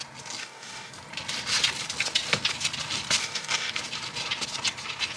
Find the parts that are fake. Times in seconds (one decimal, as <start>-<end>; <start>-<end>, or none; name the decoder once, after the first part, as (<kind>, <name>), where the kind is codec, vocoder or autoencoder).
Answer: 0.4-0.9 (codec, DAC); 3.2-3.7